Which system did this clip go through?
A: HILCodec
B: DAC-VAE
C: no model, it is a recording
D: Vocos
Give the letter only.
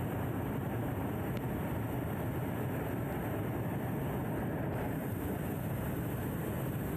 C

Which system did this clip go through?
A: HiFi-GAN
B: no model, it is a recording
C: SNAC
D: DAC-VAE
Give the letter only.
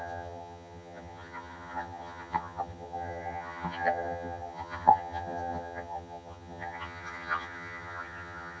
A